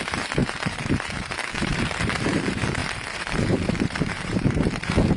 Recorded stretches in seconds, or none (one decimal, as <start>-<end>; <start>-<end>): none